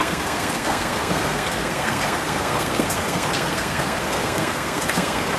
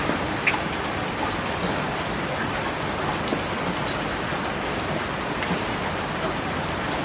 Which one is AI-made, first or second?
first